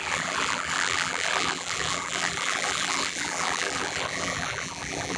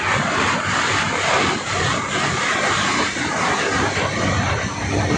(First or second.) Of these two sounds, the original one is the second